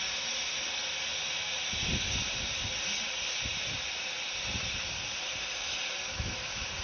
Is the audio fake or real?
real